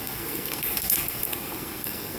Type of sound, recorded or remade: remade